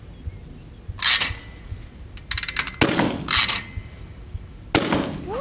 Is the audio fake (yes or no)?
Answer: no